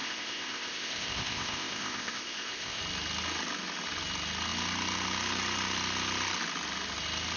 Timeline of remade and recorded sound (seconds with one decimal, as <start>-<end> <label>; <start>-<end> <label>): 0.0-2.8 remade; 2.8-7.4 recorded